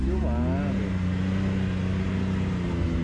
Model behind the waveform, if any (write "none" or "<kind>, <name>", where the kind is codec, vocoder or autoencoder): none